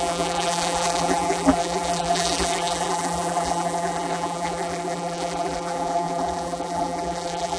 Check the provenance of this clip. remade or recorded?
remade